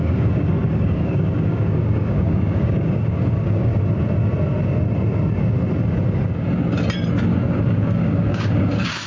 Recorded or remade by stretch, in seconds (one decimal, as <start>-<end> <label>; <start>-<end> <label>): 0.0-3.7 remade; 3.7-7.2 recorded; 7.2-9.1 remade

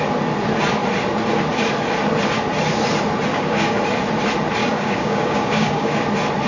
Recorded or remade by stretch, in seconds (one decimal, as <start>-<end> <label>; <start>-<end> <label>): 0.0-3.3 recorded; 3.3-3.8 remade; 3.8-4.6 recorded; 4.6-6.0 remade; 6.0-6.5 recorded